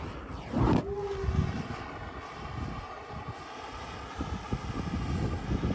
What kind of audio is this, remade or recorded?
recorded